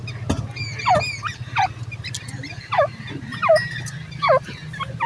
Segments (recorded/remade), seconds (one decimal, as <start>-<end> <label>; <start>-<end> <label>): 0.0-5.1 recorded